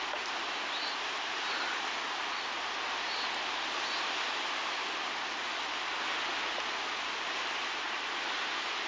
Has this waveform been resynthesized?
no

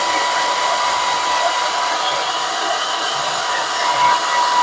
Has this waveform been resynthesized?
no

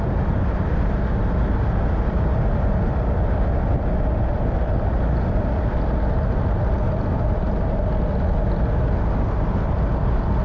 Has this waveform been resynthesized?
no